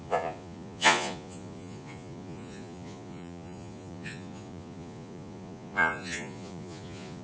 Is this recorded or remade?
remade